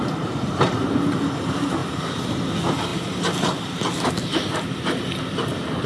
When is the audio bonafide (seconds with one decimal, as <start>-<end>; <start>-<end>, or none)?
0.0-1.8; 2.5-5.9